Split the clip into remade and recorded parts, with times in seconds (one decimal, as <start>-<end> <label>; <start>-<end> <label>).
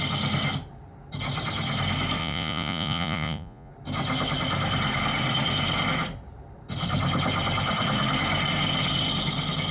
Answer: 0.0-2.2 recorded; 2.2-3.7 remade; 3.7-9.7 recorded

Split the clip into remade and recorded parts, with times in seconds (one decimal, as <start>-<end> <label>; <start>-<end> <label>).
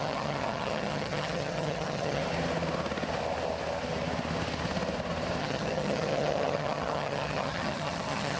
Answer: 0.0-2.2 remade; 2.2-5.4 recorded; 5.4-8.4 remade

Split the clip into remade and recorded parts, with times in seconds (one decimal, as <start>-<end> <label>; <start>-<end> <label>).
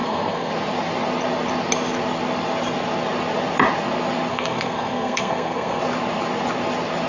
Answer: 0.0-0.5 remade; 0.5-4.3 recorded; 4.3-5.8 remade; 5.8-7.1 recorded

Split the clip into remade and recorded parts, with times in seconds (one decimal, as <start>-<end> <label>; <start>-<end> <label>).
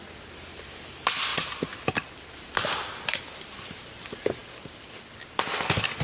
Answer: 0.0-6.0 recorded